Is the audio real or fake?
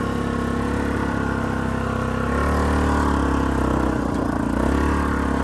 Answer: real